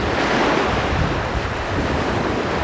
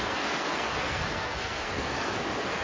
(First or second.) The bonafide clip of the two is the first